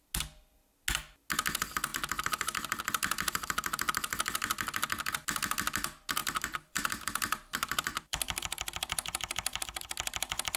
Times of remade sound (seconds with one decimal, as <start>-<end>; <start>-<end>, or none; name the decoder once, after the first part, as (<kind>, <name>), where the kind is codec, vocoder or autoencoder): 1.9-5.1 (vocoder, BigVGAN v2); 6.2-9.6